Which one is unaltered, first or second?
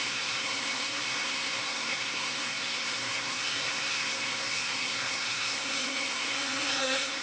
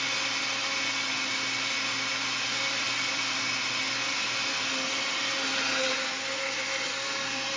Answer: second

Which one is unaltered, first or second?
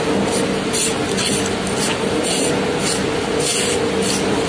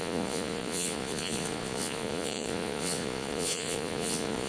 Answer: first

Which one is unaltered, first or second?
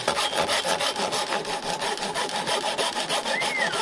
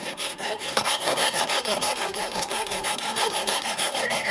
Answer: first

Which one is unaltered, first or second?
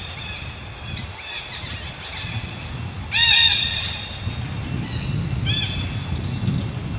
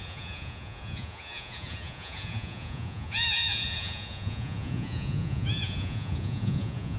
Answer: first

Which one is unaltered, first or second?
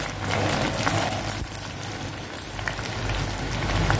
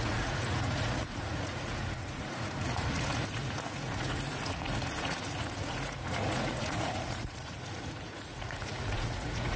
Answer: first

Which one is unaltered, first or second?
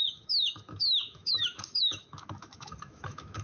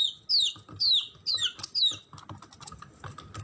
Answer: second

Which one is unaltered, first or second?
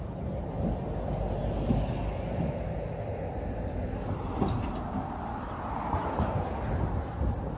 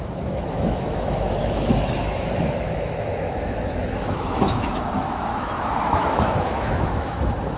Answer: first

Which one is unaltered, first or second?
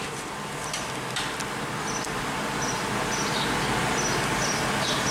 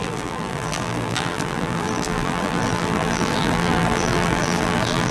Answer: first